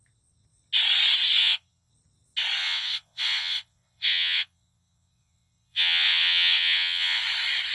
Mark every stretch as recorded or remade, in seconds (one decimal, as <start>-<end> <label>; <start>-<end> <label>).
0.0-1.4 recorded; 1.4-1.9 remade; 1.9-2.6 recorded; 2.6-7.2 remade; 7.2-7.7 recorded